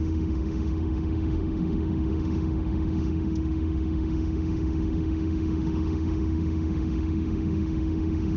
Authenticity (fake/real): fake